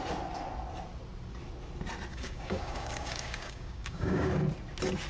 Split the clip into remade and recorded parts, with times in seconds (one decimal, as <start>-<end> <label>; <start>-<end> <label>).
0.0-2.1 recorded; 2.1-4.3 remade; 4.3-5.1 recorded